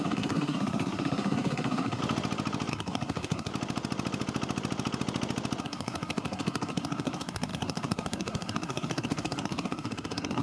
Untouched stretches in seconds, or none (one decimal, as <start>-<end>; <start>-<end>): 2.0-2.7; 3.5-5.6

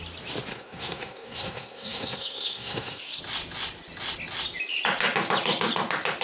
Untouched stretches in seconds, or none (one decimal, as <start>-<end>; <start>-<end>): 0.0-0.5; 3.2-6.2

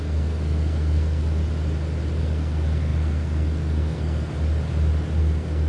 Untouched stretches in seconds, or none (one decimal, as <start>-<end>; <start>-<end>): 1.4-2.2; 4.3-5.2

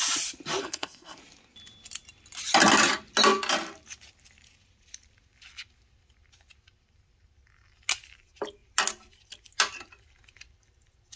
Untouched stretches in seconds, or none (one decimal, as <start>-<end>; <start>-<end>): 0.0-0.6; 1.2-11.2

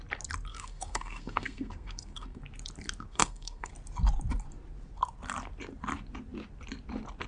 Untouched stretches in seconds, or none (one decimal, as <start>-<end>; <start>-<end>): 0.0-0.5; 2.4-3.1; 3.7-7.3

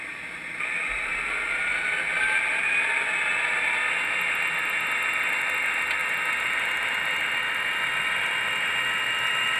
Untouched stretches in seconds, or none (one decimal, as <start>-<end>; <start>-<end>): 0.0-9.6

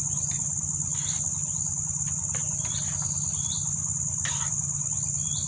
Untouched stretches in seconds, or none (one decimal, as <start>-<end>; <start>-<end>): 0.0-5.5